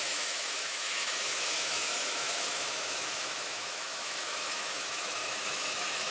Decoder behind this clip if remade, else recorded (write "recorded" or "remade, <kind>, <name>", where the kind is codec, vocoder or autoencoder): remade, autoencoder, DAC-VAE